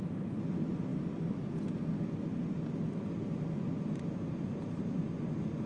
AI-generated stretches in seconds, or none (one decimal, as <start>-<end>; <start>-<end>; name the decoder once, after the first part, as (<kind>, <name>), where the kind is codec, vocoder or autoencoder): none